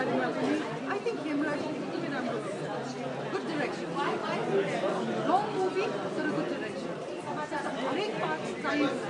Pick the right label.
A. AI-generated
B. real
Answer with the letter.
B